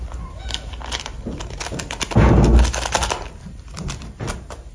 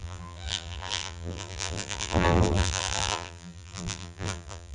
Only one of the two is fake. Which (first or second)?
second